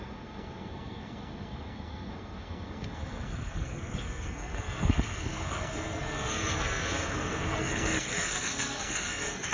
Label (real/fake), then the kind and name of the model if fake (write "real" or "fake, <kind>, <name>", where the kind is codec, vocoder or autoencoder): fake, codec, SNAC